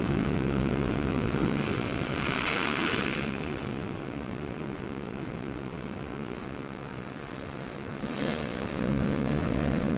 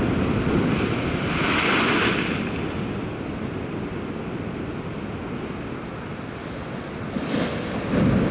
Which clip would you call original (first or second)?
second